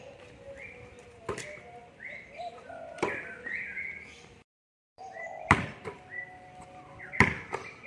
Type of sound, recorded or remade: remade